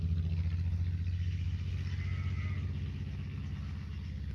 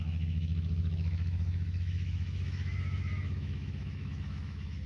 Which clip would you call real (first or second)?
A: first